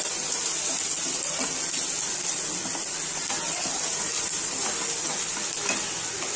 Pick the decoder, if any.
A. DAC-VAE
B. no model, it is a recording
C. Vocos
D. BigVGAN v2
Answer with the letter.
B